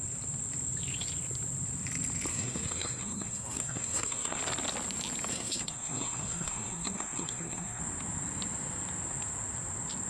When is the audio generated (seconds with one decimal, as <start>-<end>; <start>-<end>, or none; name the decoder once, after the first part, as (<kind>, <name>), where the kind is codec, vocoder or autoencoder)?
2.3-4.4 (codec, SNAC); 5.3-7.8